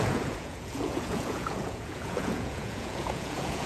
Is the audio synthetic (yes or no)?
yes